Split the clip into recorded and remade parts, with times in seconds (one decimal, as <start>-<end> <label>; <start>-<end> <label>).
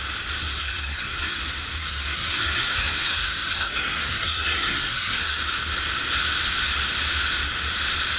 0.0-0.6 recorded; 0.6-1.4 remade; 1.4-1.8 recorded; 1.8-5.4 remade; 5.4-8.2 recorded